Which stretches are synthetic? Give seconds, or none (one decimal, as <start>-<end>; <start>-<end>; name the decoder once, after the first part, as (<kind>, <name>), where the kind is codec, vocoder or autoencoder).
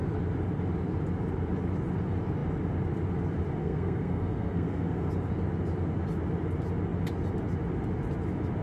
3.6-5.1 (codec, SNAC)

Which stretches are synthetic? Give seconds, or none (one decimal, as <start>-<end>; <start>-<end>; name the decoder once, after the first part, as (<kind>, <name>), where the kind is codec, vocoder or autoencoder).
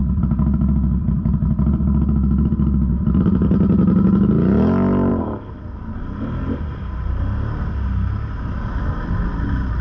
none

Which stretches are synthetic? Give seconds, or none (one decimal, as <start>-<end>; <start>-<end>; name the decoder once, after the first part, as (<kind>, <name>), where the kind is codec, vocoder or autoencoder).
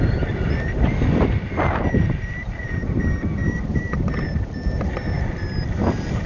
2.4-3.0 (vocoder, BigVGAN v2); 3.4-4.1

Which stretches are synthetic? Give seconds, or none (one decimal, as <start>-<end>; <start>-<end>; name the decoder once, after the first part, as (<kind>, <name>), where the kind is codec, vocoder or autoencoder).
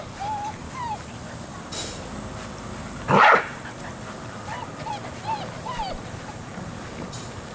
0.0-0.6 (vocoder, BigVGAN v2); 3.1-7.5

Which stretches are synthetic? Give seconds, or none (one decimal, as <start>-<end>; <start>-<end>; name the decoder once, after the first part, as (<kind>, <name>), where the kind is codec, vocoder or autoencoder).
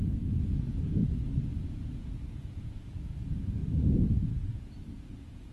0.0-1.0 (vocoder, Vocos); 1.7-5.5